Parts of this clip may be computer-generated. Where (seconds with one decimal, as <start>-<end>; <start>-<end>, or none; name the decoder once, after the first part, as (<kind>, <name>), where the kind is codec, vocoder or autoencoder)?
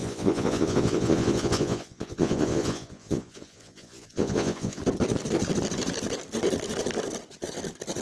0.0-4.8 (vocoder, Vocos)